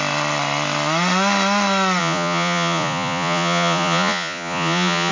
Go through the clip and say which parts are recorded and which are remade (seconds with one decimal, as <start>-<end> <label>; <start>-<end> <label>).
0.0-2.0 recorded; 2.0-5.1 remade